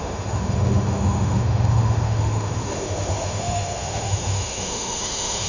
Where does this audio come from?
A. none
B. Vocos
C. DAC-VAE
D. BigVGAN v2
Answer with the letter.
C